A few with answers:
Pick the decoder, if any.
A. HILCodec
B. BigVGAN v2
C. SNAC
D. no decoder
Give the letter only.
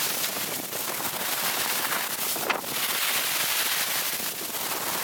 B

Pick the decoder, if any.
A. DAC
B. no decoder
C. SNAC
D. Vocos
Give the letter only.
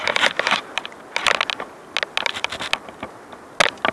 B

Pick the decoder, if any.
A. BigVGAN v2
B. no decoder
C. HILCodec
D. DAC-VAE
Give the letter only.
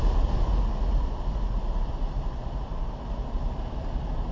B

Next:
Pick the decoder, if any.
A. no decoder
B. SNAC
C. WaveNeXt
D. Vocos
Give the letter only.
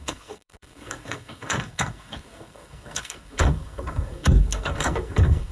B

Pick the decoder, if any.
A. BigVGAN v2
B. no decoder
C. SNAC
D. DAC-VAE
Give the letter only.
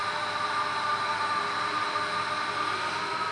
B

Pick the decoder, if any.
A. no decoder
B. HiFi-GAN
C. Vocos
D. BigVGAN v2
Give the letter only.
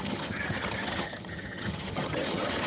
B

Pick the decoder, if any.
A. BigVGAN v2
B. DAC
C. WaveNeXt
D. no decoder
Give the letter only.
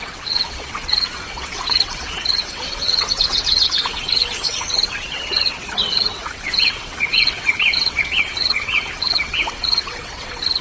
C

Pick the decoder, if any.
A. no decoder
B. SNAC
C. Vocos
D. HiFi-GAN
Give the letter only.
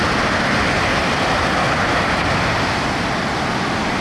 A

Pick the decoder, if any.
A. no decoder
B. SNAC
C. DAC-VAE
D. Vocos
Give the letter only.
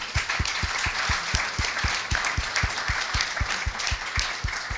A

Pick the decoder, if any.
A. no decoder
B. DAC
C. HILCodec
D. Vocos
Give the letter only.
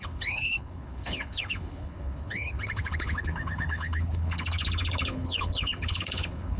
C